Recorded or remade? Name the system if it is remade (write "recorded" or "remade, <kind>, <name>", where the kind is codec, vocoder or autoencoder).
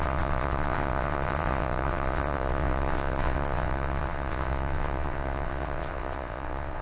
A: remade, vocoder, WaveNeXt